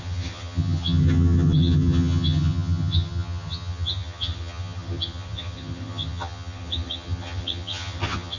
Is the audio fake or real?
fake